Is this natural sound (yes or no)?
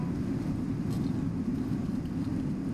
yes